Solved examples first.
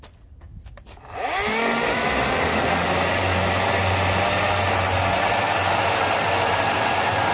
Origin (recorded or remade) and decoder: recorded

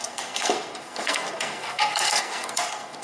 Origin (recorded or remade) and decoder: remade, codec, SNAC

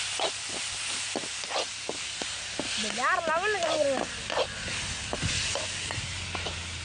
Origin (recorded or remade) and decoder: recorded